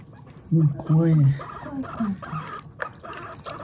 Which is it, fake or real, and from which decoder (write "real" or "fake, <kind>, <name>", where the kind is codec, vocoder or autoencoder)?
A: real